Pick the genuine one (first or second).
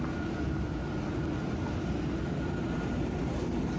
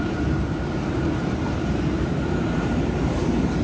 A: first